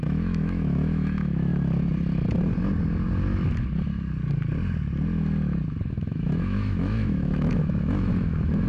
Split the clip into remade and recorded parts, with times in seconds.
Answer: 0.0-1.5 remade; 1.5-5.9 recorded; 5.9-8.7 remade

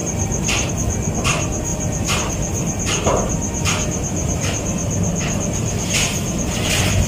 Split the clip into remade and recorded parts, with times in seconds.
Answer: 0.0-0.7 remade; 0.7-1.7 recorded; 1.7-5.9 remade; 5.9-7.1 recorded

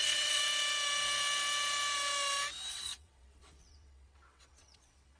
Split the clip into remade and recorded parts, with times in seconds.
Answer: 0.0-0.4 remade; 0.4-2.7 recorded; 2.7-5.2 remade

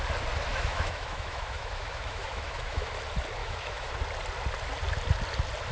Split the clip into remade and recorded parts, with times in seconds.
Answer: 0.0-0.5 recorded; 0.5-2.9 remade; 2.9-3.4 recorded; 3.4-3.9 remade; 3.9-5.7 recorded